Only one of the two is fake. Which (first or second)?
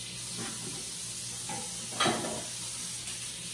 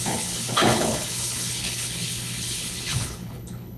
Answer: second